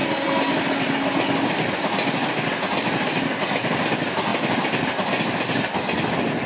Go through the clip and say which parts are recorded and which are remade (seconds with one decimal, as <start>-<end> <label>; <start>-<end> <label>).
0.0-6.5 recorded